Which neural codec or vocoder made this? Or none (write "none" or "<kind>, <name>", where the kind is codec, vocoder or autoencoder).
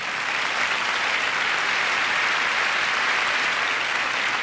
none